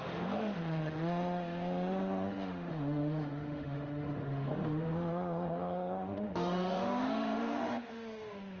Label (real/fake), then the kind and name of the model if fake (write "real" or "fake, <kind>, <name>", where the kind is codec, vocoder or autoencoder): fake, autoencoder, DAC-VAE